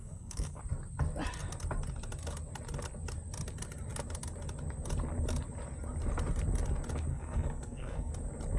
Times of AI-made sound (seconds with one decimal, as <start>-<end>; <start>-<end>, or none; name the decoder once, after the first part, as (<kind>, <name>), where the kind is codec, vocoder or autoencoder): 0.0-0.6 (codec, SNAC); 7.1-8.1